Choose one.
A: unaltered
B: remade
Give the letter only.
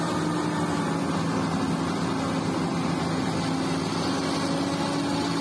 A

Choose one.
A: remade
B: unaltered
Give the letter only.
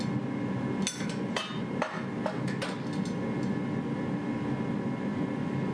B